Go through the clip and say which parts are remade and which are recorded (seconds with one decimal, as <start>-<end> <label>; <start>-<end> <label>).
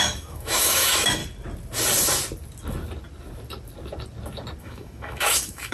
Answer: 0.0-1.2 remade; 1.2-4.6 recorded; 4.6-5.7 remade